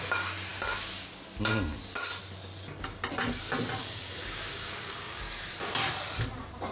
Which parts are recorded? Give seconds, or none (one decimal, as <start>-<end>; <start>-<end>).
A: 0.0-3.8; 5.2-6.7